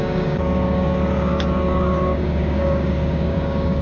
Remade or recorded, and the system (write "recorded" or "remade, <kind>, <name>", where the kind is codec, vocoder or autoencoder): remade, codec, DAC